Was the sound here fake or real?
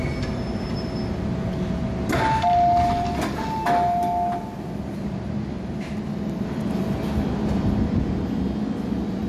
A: real